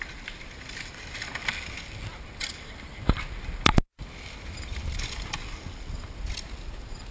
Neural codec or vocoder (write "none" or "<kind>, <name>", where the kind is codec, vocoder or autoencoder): none